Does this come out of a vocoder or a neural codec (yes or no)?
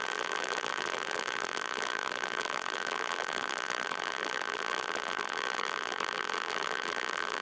yes